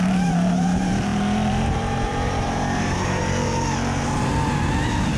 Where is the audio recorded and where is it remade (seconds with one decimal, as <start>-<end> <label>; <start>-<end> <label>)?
0.0-5.2 remade